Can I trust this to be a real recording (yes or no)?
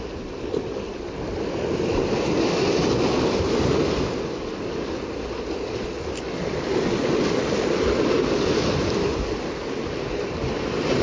yes